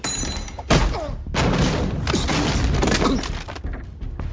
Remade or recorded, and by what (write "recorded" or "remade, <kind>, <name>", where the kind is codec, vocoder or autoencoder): recorded